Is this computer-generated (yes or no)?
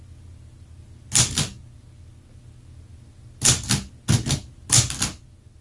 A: no